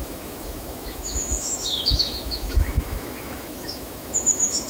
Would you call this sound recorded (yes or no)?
no